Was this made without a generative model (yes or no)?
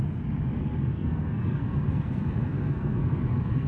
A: no